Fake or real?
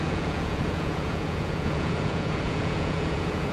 fake